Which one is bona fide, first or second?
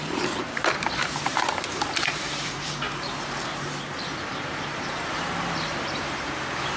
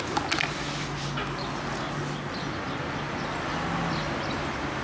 second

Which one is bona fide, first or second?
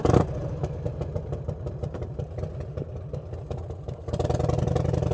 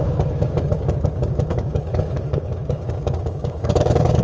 first